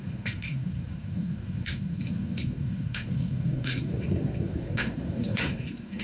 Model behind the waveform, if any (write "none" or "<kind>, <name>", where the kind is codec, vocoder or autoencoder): codec, SNAC